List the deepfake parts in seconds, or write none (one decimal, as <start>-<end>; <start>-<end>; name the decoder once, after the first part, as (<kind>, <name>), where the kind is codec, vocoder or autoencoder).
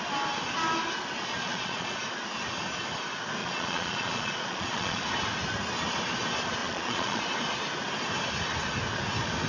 1.4-2.0 (vocoder, Vocos); 3.4-5.0; 6.6-7.2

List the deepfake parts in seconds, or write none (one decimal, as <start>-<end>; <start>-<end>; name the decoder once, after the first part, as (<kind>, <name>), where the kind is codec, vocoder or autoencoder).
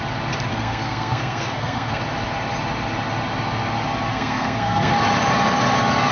0.5-2.0 (codec, SNAC); 4.1-4.9